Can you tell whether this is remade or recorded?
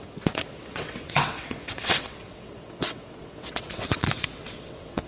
remade